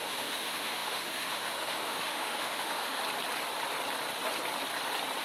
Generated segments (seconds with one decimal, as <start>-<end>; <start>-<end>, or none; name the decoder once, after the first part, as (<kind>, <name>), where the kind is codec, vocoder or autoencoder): 0.0-3.0 (autoencoder, DAC-VAE)